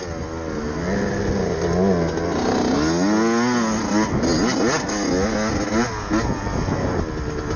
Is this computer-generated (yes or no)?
no